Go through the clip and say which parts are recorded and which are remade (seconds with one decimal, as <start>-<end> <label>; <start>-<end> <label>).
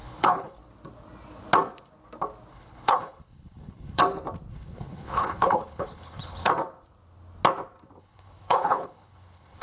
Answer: 0.0-0.6 remade; 0.6-2.5 recorded; 2.5-4.0 remade; 4.0-4.5 recorded; 4.5-6.5 remade; 6.5-8.0 recorded; 8.0-9.6 remade